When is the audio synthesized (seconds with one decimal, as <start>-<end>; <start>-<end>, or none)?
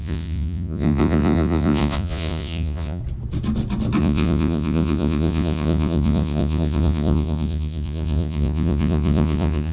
0.0-3.0; 4.0-9.7